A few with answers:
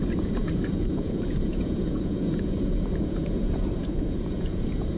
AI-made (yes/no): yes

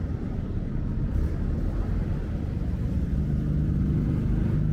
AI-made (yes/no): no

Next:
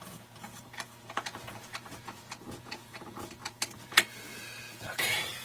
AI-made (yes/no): yes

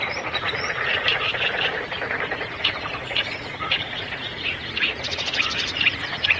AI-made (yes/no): yes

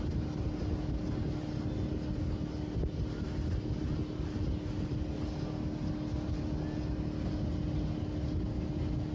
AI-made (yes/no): no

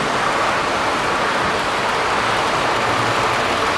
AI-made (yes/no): no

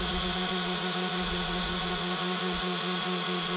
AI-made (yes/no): yes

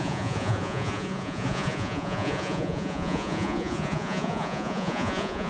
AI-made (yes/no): yes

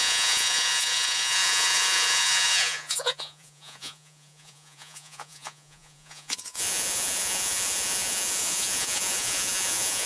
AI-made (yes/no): yes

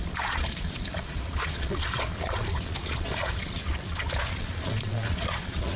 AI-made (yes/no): yes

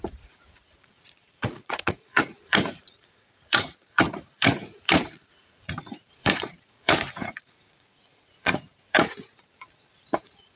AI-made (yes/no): yes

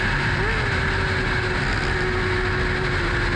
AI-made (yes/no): no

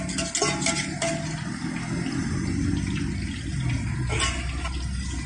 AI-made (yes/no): no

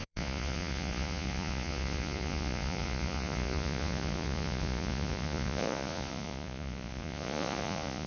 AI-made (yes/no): yes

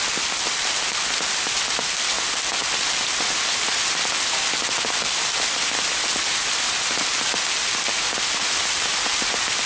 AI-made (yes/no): no